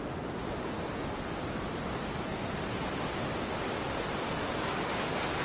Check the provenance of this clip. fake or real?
real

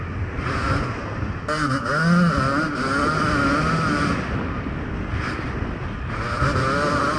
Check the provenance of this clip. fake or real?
real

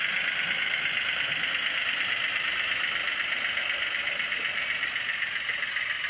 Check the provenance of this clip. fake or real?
real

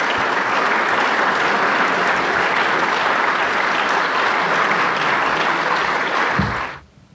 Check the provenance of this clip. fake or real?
real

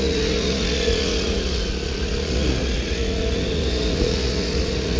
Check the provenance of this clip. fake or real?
fake